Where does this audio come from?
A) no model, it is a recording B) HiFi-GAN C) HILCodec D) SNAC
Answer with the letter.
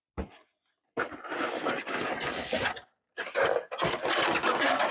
A